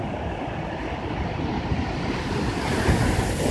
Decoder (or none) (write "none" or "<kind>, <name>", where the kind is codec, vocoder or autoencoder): none